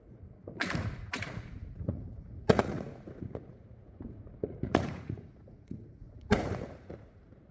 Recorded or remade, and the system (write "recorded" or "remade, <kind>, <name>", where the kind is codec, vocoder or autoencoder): remade, vocoder, Vocos